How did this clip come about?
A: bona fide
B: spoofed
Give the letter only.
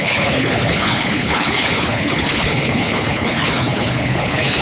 B